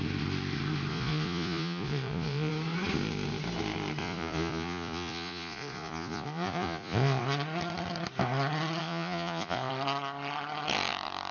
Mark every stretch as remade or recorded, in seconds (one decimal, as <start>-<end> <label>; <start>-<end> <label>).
0.0-0.9 recorded; 0.9-2.5 remade; 2.5-4.0 recorded; 4.0-7.2 remade; 7.2-8.8 recorded; 8.8-9.7 remade; 9.7-11.3 recorded